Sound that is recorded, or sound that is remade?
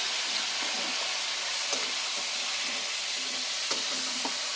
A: recorded